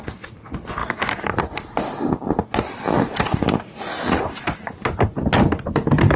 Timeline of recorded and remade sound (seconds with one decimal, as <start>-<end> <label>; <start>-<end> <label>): 0.0-6.2 recorded